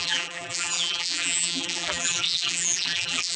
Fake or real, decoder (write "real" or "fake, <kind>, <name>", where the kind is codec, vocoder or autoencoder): fake, vocoder, BigVGAN v2